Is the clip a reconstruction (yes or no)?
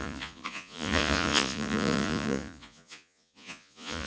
yes